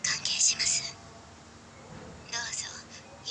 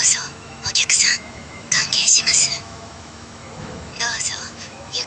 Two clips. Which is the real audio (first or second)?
first